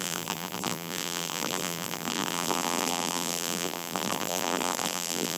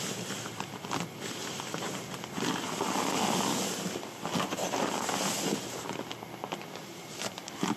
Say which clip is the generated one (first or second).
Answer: first